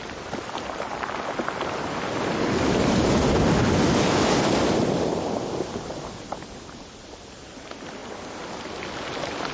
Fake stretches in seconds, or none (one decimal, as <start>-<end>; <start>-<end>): none